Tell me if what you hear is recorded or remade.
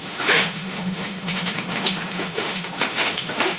remade